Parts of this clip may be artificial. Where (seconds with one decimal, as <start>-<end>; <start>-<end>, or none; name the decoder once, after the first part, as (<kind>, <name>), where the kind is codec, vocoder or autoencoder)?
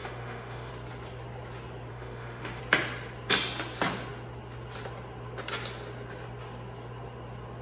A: 0.0-0.7 (autoencoder, DAC-VAE); 1.9-2.6